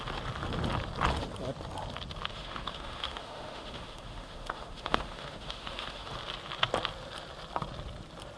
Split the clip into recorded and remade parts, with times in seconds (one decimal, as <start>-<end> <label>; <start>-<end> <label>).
0.0-2.3 recorded; 2.3-6.1 remade; 6.1-8.4 recorded